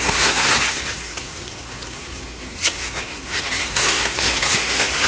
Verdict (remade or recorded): remade